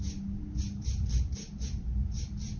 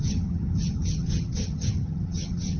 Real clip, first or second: first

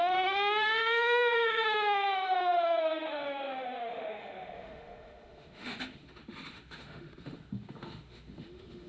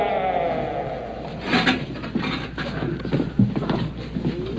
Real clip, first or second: second